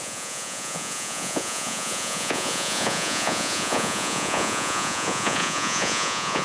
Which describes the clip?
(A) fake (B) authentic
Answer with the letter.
A